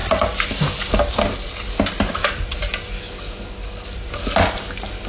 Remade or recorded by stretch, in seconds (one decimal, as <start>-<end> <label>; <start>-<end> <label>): 0.0-5.1 recorded